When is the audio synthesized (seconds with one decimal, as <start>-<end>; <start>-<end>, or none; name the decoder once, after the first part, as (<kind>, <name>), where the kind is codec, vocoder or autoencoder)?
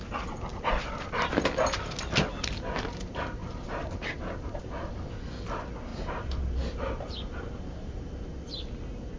0.5-1.3 (vocoder, BigVGAN v2); 3.4-4.6; 5.9-8.3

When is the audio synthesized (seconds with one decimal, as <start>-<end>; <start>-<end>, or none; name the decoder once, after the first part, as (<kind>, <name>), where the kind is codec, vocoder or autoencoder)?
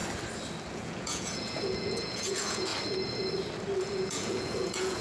0.7-2.7 (vocoder, Vocos); 3.8-5.0